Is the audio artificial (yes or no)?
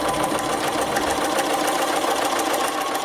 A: no